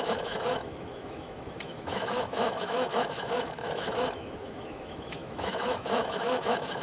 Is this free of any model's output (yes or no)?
no